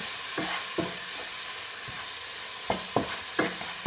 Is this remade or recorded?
recorded